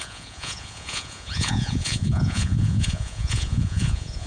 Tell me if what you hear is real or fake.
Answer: fake